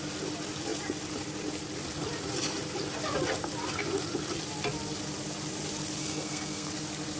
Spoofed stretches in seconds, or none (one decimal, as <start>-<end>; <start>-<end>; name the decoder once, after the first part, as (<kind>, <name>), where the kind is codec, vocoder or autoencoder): 6.0-6.7 (codec, SNAC)